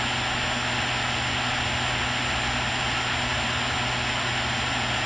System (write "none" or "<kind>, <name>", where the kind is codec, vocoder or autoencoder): none